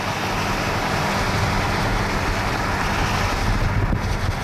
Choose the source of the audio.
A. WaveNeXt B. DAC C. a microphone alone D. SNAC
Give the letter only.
C